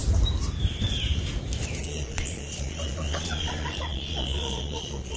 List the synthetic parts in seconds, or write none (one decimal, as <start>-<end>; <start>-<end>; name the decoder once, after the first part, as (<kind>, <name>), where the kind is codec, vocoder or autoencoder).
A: 1.8-5.2 (vocoder, Vocos)